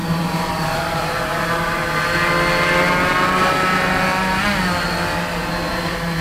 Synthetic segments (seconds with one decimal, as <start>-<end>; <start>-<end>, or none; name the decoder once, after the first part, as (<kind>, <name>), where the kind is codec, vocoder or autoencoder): 0.0-1.8 (vocoder, BigVGAN v2); 5.5-6.2